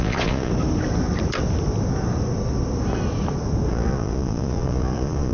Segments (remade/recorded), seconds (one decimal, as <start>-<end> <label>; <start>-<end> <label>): 0.0-0.5 remade; 0.5-3.7 recorded; 3.7-5.3 remade

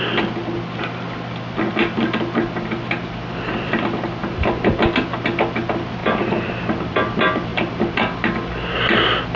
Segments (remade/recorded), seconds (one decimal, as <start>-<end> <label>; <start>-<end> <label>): 0.0-4.2 remade; 4.2-5.4 recorded; 5.4-6.0 remade; 6.0-6.5 recorded; 6.5-7.5 remade; 7.5-9.4 recorded